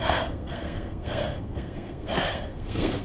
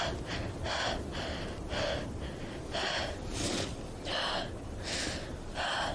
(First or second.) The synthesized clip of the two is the first